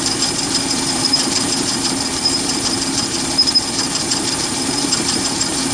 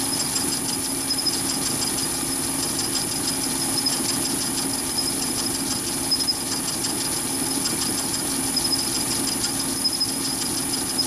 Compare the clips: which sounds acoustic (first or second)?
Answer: second